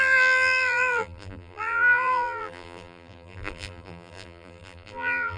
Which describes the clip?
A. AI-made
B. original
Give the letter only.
A